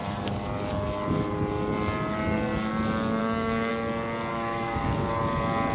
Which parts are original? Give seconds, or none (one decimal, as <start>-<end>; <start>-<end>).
0.0-3.2; 3.7-4.3; 5.1-5.7